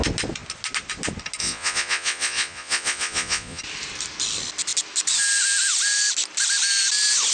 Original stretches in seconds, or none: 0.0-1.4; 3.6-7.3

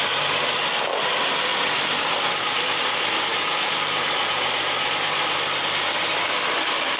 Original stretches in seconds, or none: 1.5-2.0

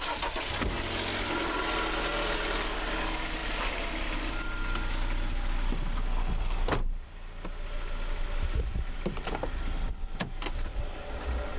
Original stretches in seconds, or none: 0.0-11.6

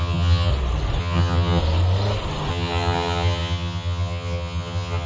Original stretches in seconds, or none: 0.5-1.0; 1.6-2.5

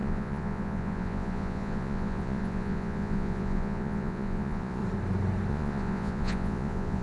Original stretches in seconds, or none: 4.8-5.5

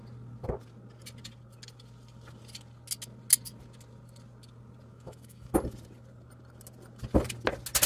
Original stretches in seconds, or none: 0.0-4.9; 5.5-7.9